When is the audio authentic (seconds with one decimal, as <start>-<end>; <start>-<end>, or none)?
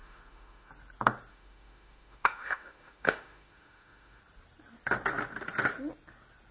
0.7-1.3; 4.2-6.5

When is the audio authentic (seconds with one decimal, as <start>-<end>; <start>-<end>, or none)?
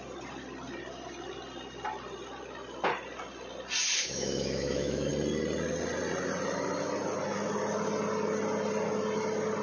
0.0-4.0; 5.1-9.6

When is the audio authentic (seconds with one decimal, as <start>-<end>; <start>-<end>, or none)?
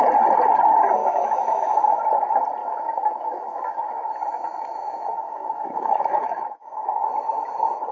0.0-1.0; 2.0-2.6; 7.1-7.9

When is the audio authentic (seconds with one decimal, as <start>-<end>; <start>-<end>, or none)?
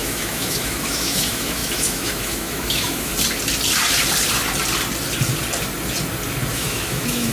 3.1-6.5